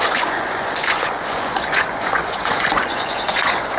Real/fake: fake